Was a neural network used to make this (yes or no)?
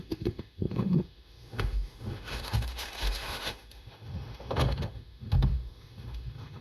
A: yes